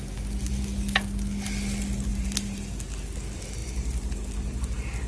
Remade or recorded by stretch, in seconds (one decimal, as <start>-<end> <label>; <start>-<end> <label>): 0.0-2.1 recorded; 2.1-2.7 remade; 2.7-5.1 recorded